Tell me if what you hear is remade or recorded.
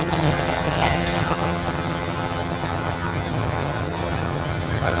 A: remade